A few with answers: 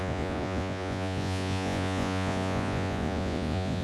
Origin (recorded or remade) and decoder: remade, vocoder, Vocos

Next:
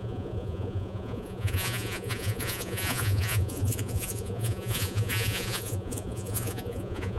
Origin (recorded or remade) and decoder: remade, vocoder, Vocos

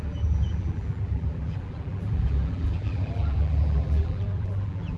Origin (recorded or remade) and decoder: remade, vocoder, BigVGAN v2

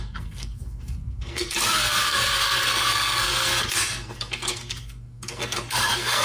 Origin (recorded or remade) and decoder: remade, codec, SNAC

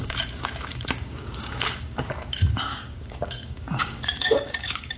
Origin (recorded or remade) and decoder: remade, codec, DAC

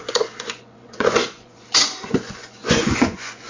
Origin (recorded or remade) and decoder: remade, vocoder, Vocos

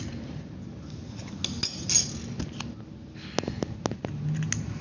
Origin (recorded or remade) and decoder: recorded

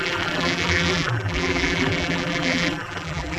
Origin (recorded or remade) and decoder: remade, vocoder, BigVGAN v2